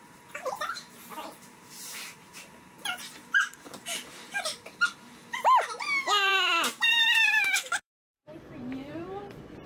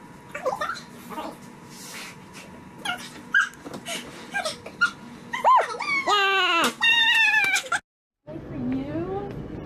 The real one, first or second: second